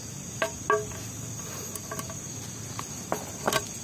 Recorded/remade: recorded